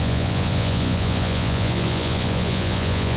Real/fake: fake